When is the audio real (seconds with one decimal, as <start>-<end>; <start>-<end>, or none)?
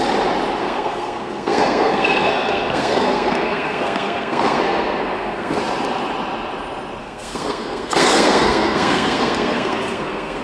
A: 0.0-0.6; 5.6-7.0